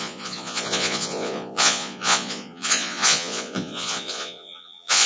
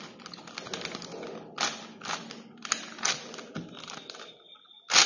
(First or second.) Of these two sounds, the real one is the second